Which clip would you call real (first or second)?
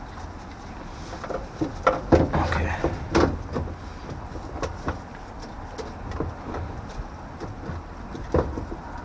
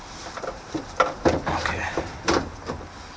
first